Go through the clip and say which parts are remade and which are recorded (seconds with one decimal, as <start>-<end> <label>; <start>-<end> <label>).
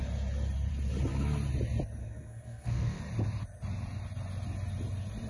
0.0-2.0 recorded; 2.0-3.0 remade; 3.0-5.3 recorded